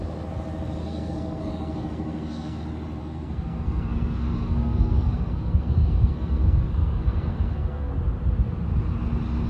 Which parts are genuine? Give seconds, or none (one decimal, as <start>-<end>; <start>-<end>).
0.0-0.8; 2.6-3.0; 7.9-9.5